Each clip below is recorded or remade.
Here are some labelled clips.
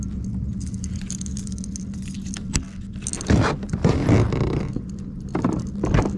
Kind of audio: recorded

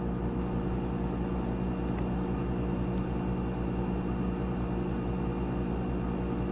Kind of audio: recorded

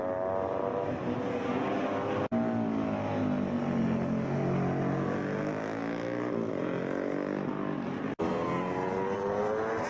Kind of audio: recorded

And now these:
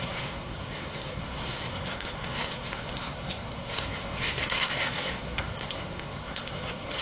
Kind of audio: remade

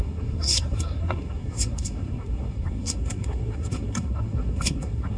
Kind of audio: remade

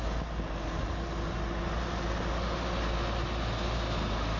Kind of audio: recorded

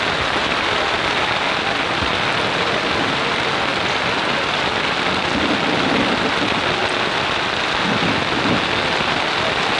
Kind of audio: recorded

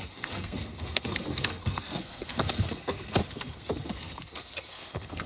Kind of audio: remade